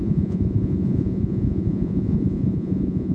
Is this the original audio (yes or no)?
no